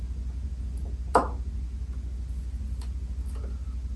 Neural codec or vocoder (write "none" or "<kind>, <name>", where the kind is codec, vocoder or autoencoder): none